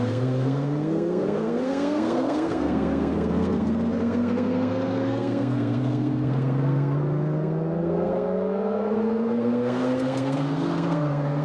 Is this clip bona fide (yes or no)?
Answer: no